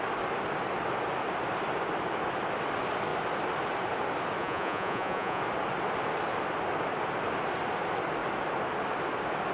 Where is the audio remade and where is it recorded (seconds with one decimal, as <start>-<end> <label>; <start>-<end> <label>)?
0.0-4.4 recorded; 4.4-5.4 remade; 5.4-9.5 recorded